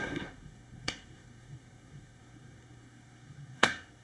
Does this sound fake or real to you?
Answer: fake